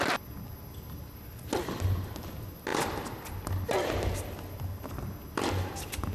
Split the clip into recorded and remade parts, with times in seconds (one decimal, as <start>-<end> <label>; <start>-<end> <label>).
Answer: 0.0-6.1 recorded

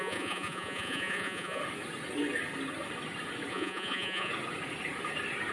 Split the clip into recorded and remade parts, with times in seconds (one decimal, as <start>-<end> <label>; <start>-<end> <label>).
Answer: 0.0-1.6 remade; 1.6-3.5 recorded; 3.5-4.3 remade; 4.3-5.5 recorded

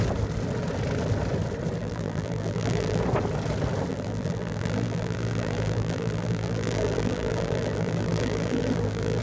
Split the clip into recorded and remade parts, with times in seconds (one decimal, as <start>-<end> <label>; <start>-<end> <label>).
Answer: 0.0-1.8 recorded; 1.8-3.0 remade; 3.0-3.9 recorded; 3.9-9.2 remade

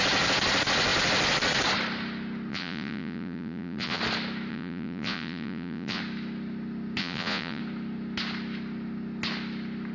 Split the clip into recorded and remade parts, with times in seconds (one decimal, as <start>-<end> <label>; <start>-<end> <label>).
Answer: 0.0-2.5 recorded; 2.5-4.0 remade; 4.0-4.5 recorded; 4.5-6.0 remade; 6.0-7.0 recorded; 7.0-7.6 remade; 7.6-9.9 recorded